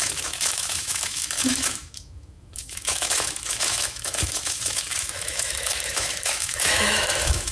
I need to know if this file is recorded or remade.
remade